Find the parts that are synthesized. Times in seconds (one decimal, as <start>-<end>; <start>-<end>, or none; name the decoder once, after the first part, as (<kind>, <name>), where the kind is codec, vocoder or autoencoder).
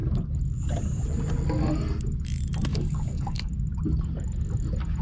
2.7-3.5 (codec, DAC)